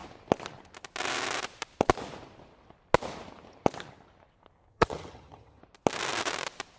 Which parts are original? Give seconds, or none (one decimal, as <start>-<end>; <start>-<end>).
0.0-4.7; 5.6-6.8